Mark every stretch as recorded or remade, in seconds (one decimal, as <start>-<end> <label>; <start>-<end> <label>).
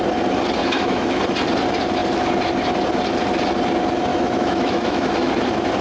0.0-0.6 recorded; 0.6-1.2 remade; 1.2-4.1 recorded; 4.1-5.3 remade; 5.3-5.8 recorded